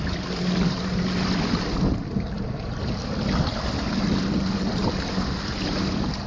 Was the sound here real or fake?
real